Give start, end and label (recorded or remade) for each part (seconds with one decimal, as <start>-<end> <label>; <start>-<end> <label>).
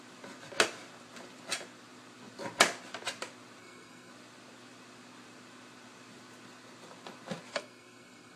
0.0-3.6 recorded; 3.6-4.1 remade; 4.1-7.5 recorded; 7.5-8.4 remade